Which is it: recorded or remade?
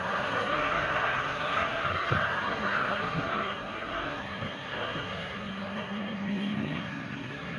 remade